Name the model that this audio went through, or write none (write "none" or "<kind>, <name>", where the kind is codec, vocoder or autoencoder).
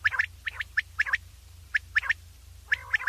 vocoder, BigVGAN v2